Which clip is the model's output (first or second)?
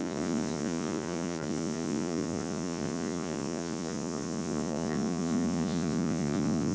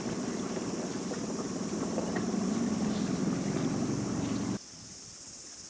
first